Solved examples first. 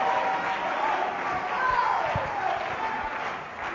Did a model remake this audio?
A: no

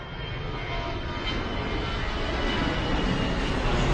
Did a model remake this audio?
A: no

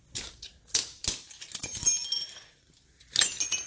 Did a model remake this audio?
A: no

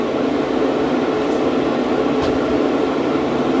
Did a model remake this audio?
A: no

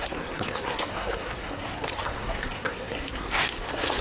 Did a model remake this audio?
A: yes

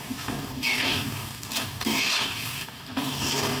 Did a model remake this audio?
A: yes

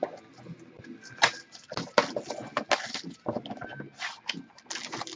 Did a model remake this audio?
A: no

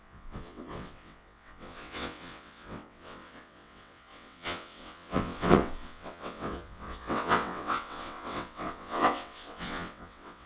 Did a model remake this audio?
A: yes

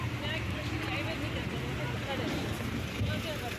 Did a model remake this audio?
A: no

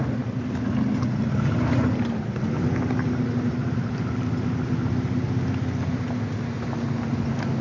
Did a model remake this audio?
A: no